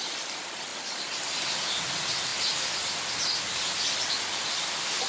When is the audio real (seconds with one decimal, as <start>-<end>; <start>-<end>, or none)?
0.0-5.1